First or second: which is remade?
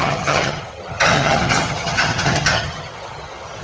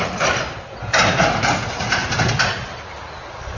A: first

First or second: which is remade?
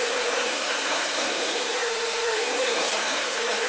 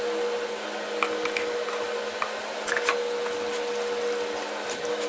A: first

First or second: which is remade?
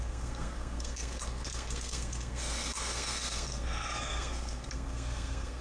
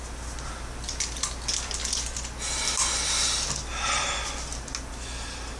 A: first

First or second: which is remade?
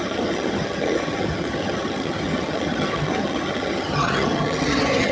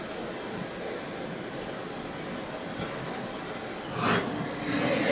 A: first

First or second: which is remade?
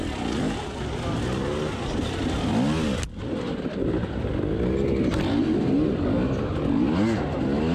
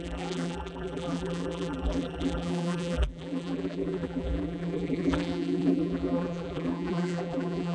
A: second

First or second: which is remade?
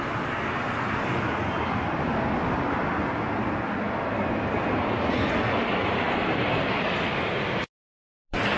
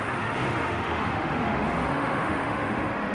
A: second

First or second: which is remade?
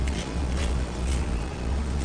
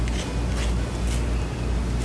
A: first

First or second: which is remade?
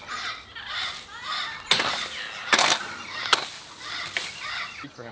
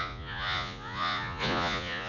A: second